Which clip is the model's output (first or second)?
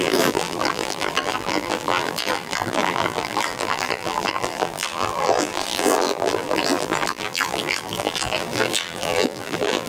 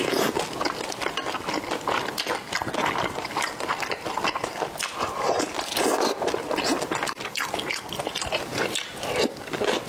first